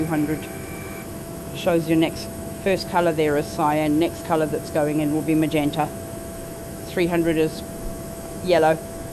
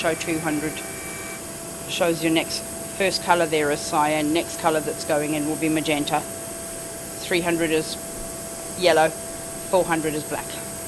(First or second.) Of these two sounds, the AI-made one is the first